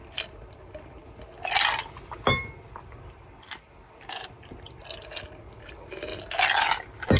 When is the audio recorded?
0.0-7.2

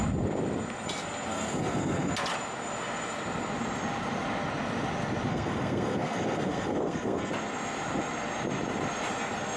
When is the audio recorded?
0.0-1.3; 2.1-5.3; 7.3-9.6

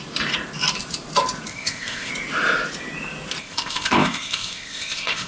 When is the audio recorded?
0.0-1.5; 2.1-3.4